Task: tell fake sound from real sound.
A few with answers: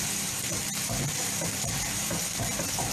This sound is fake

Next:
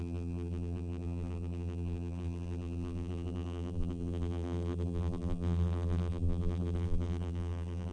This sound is fake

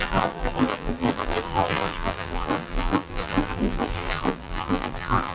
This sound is fake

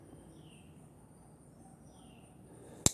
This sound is real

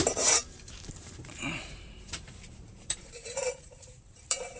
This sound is fake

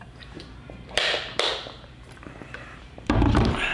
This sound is fake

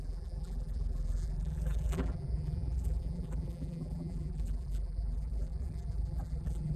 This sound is fake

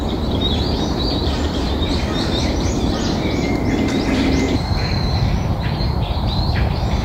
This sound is fake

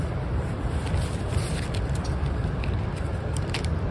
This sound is fake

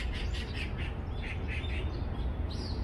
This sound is real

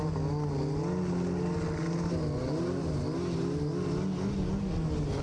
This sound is real